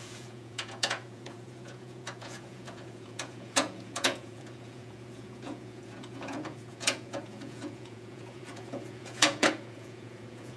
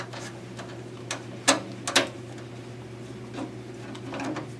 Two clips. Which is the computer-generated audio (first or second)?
first